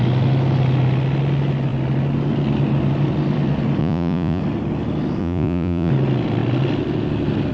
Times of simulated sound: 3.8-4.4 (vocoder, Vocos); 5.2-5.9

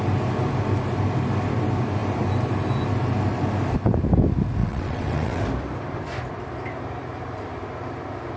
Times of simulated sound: 4.6-5.4 (vocoder, WaveNeXt)

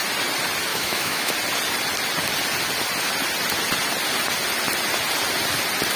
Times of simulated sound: 0.7-1.3 (autoencoder, DAC-VAE)

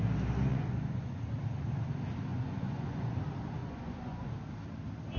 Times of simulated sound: 0.5-1.2 (vocoder, Vocos); 2.3-3.2; 3.6-4.3

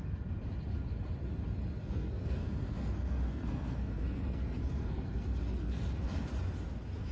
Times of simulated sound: 1.8-6.1 (codec, SNAC)

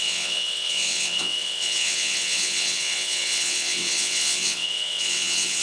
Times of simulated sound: 0.0-5.6 (vocoder, WaveNeXt)